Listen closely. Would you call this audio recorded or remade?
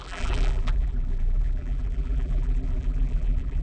remade